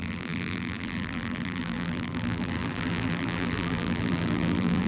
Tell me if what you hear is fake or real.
fake